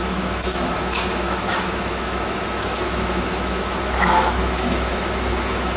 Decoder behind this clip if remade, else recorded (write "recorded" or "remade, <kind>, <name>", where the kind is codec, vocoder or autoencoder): remade, autoencoder, DAC-VAE